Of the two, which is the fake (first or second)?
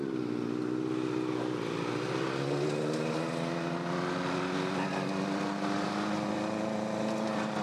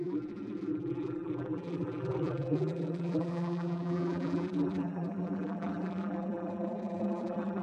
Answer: second